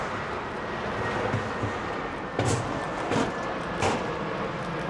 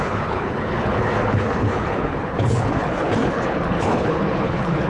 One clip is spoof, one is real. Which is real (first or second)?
first